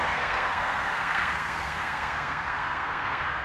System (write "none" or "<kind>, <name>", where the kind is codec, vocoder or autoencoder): codec, SNAC